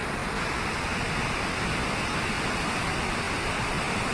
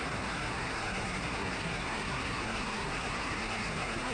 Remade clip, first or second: second